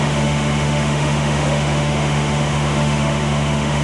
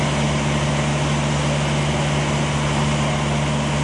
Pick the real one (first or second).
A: second